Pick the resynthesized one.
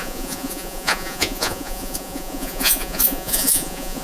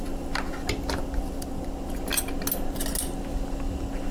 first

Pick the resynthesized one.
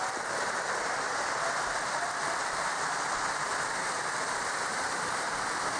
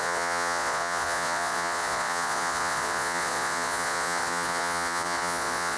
second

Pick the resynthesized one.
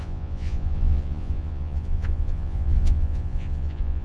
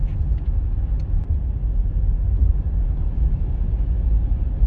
first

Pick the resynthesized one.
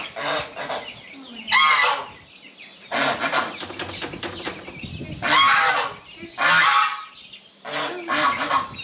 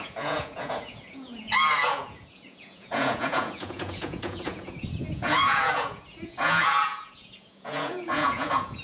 second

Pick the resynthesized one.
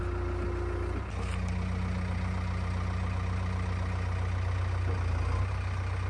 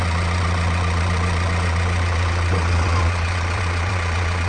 second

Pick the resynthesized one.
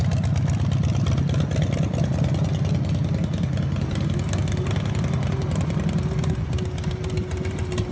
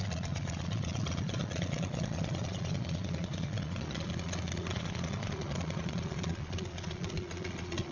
second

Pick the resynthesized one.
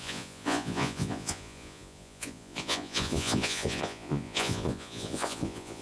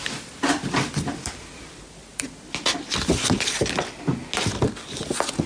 first